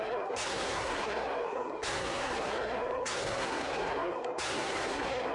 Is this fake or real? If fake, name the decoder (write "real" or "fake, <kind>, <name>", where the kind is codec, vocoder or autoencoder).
fake, codec, SNAC